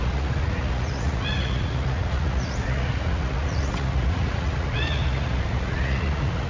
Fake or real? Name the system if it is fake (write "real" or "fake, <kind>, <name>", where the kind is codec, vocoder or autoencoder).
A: fake, vocoder, Vocos